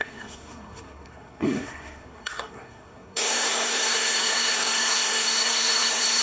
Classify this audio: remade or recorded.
remade